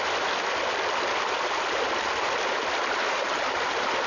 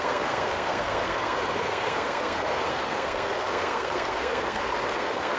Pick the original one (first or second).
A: first